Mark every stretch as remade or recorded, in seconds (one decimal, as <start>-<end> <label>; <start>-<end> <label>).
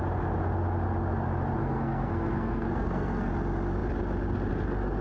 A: 0.0-1.6 recorded; 1.6-3.3 remade; 3.3-5.0 recorded